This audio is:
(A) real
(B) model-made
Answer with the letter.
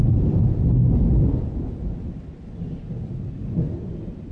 A